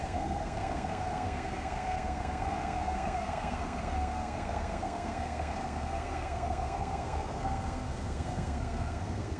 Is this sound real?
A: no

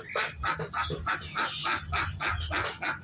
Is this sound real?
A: yes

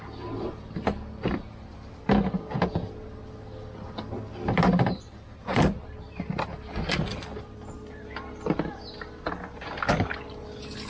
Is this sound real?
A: yes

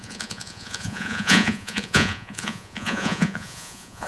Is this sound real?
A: no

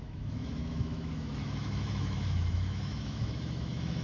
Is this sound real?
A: no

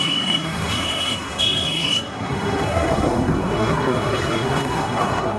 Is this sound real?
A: no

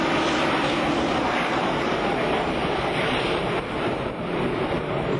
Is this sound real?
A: no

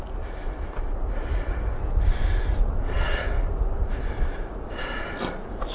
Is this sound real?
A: yes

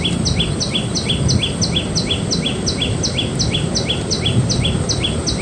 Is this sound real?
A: yes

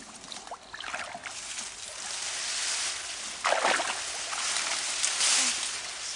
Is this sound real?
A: yes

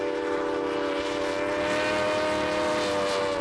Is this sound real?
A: yes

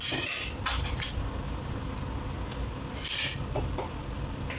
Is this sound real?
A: yes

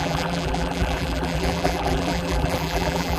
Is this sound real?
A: no